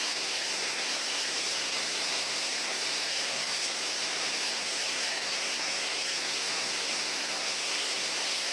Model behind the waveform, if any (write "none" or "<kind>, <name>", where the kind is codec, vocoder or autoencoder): codec, SNAC